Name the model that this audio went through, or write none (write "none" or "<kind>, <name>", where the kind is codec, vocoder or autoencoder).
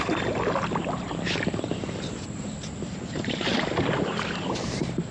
none